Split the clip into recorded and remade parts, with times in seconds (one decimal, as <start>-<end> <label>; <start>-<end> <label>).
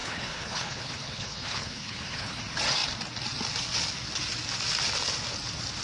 0.0-2.4 remade; 2.4-5.8 recorded